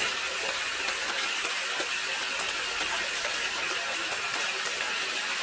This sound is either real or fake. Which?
real